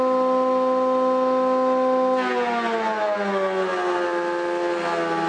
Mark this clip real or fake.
real